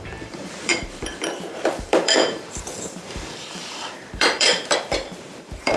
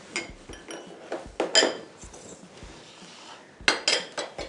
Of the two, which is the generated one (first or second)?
first